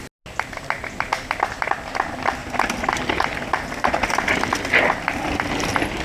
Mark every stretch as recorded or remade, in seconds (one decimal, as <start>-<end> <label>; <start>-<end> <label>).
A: 0.0-6.0 recorded

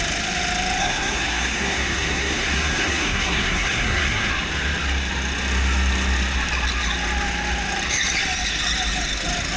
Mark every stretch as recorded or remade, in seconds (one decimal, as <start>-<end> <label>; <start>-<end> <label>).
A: 0.0-0.8 recorded; 0.8-4.3 remade; 4.3-9.6 recorded

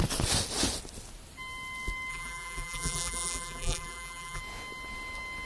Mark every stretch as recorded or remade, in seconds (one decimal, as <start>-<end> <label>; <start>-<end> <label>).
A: 0.0-2.1 recorded; 2.1-4.4 remade; 4.4-5.5 recorded

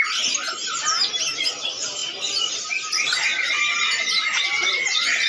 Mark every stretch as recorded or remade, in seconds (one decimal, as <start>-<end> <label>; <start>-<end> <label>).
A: 0.0-0.6 recorded; 0.6-1.2 remade; 1.2-5.3 recorded

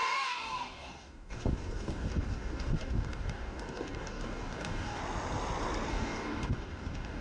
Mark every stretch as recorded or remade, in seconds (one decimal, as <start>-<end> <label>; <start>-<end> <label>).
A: 0.0-5.0 remade; 5.0-5.9 recorded; 5.9-7.2 remade

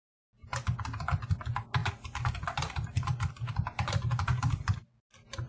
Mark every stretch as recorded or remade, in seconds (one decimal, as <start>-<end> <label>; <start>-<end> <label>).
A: 0.0-1.8 recorded; 1.8-3.3 remade; 3.3-4.3 recorded; 4.3-4.9 remade; 4.9-5.5 recorded

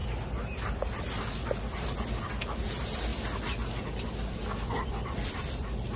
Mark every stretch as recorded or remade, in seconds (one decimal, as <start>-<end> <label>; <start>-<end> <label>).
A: 0.0-3.1 remade; 3.1-3.8 recorded; 3.8-6.0 remade

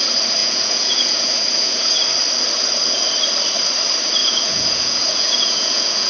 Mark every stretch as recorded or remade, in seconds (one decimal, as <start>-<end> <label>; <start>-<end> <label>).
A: 0.0-0.4 recorded; 0.4-2.0 remade; 2.0-4.2 recorded; 4.2-6.1 remade